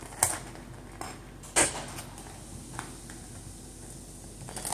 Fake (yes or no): no